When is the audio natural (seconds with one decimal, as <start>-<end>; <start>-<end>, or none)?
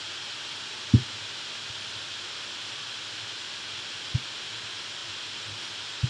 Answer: 0.0-6.1